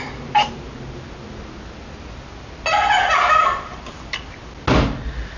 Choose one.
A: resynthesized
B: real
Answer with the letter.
B